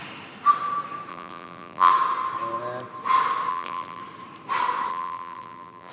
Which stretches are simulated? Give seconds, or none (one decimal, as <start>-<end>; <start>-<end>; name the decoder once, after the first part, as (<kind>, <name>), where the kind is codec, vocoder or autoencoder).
1.1-1.9 (vocoder, BigVGAN v2); 3.5-4.0; 4.9-5.9